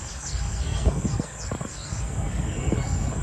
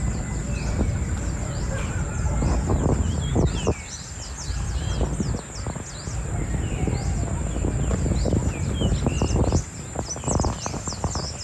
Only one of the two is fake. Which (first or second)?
first